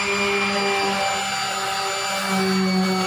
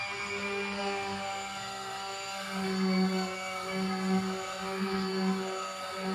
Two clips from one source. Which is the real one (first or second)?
first